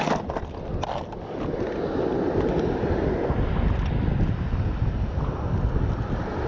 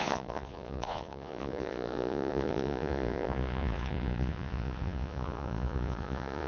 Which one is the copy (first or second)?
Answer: second